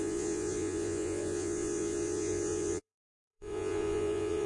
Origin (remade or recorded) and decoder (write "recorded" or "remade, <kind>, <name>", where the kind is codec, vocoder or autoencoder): remade, vocoder, Vocos